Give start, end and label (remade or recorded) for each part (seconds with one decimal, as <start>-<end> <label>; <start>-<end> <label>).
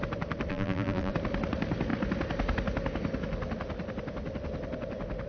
0.0-0.5 recorded; 0.5-1.1 remade; 1.1-5.3 recorded